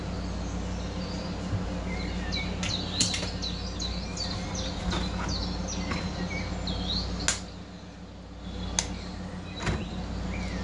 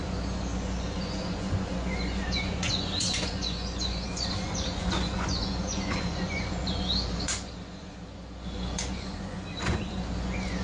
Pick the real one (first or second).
first